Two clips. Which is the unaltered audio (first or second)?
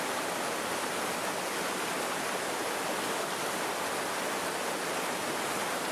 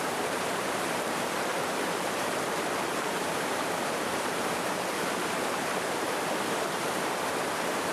first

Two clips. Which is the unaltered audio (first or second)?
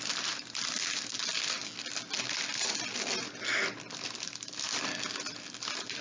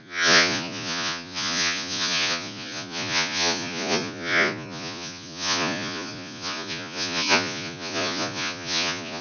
first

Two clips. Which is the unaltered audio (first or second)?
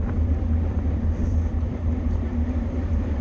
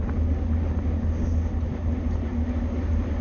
second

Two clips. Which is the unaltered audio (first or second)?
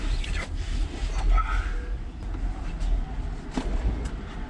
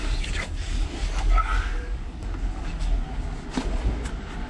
first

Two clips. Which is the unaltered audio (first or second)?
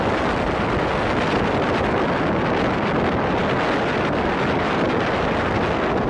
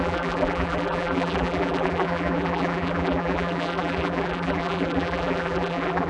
first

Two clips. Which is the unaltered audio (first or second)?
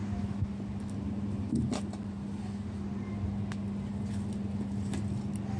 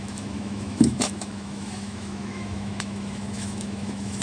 first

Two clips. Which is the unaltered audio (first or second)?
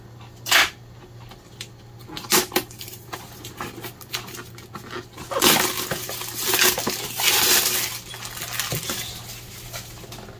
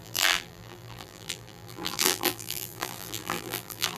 first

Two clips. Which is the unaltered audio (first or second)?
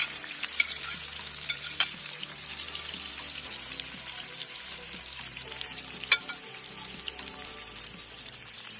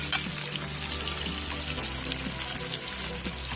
second